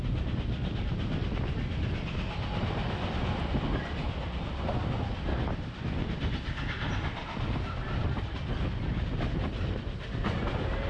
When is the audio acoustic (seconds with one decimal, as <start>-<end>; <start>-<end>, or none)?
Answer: 0.0-10.9

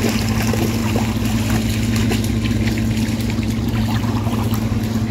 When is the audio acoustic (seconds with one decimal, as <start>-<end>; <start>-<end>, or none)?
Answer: 0.0-5.1

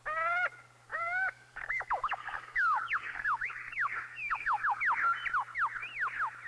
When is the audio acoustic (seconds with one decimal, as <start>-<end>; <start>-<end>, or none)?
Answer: 0.0-0.9; 4.8-6.5

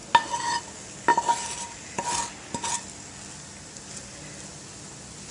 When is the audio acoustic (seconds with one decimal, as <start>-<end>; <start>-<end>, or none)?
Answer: 0.0-5.3

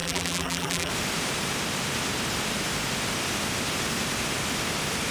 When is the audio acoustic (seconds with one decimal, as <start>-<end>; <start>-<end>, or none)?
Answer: 0.9-5.1

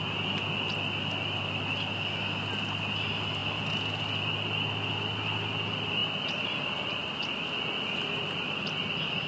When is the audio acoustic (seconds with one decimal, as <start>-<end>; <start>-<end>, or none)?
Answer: 0.0-9.3

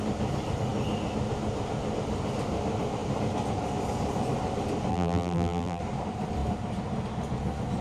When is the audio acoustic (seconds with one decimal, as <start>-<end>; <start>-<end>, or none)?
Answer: 0.0-4.9; 5.8-7.8

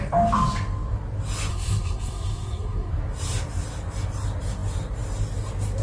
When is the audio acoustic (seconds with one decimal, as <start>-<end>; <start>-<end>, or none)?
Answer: 0.0-1.5; 2.9-5.8